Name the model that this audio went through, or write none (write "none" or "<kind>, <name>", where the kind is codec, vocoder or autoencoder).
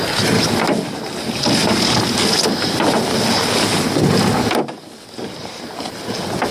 none